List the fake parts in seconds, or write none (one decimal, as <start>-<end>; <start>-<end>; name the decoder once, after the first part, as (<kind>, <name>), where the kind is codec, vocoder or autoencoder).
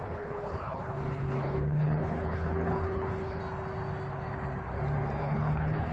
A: 0.0-3.4 (codec, HILCodec); 5.2-5.9